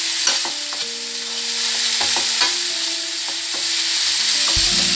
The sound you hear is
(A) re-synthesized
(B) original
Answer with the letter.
B